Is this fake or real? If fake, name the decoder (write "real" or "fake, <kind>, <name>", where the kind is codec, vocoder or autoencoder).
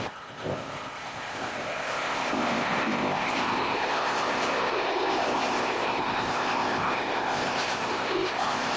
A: fake, codec, ZipCodec